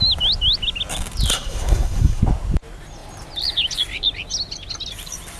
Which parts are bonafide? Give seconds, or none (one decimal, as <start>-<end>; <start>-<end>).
0.0-1.3; 2.2-5.4